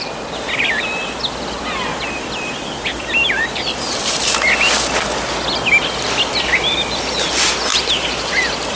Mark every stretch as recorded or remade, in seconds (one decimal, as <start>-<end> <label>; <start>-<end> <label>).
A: 0.0-1.9 recorded; 1.9-4.0 remade; 4.0-8.8 recorded